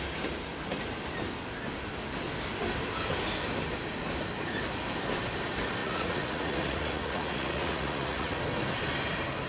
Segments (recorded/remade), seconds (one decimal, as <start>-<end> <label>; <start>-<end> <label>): 0.0-5.8 recorded; 5.8-8.4 remade; 8.4-9.5 recorded